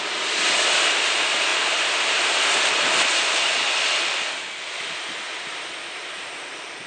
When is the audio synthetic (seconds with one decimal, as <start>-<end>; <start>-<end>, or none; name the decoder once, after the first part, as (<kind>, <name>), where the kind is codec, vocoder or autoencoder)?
none